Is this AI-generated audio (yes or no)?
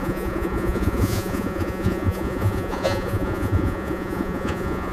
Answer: yes